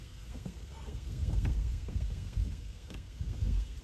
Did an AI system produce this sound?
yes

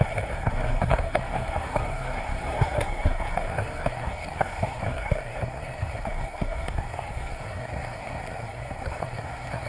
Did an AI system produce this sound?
yes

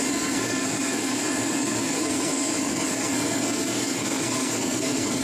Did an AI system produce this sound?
yes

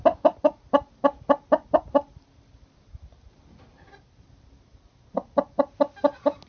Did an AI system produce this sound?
no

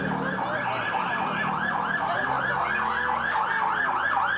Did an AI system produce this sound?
no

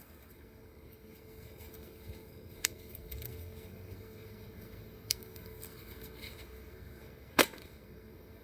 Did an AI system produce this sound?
yes